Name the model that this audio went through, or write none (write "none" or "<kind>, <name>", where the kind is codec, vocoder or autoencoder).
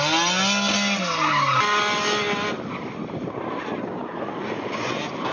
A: none